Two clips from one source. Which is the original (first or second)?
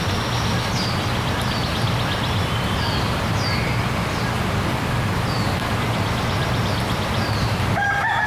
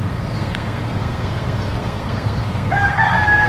first